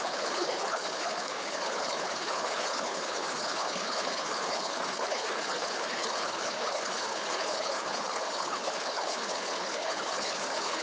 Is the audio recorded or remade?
remade